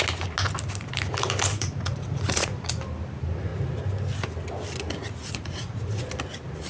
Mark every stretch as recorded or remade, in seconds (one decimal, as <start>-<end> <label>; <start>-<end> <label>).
0.0-1.5 recorded; 1.5-2.7 remade; 2.7-5.2 recorded; 5.2-6.1 remade; 6.1-6.7 recorded